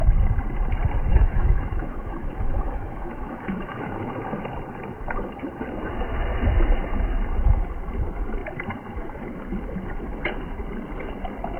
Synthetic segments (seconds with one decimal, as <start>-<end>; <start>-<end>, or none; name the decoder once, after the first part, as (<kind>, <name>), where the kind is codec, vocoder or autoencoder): 1.1-4.1 (autoencoder, DAC-VAE)